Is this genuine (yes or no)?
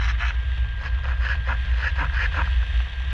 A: yes